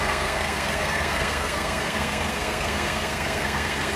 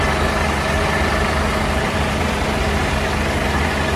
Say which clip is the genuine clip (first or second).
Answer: second